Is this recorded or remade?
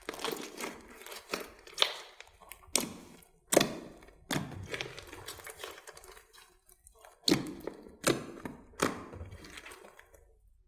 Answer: recorded